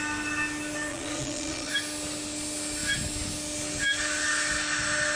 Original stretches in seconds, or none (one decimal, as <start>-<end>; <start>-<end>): 0.0-0.9; 1.7-5.2